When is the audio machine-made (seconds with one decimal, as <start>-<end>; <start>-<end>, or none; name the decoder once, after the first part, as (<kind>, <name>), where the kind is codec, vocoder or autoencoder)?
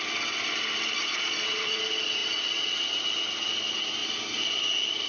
1.1-1.7 (vocoder, Vocos)